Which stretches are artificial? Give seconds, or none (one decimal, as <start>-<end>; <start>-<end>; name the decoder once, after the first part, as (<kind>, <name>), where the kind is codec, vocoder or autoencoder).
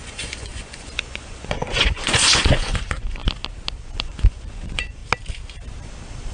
0.0-3.2 (vocoder, Vocos); 4.0-5.0